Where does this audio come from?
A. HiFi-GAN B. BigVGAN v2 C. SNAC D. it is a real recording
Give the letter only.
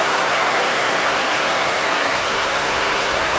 C